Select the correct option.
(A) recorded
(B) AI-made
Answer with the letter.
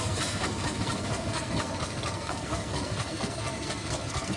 B